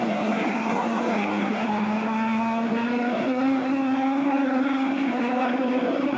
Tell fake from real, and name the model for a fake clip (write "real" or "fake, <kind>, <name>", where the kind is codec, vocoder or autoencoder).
fake, codec, SNAC